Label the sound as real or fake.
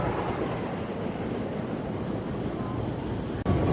real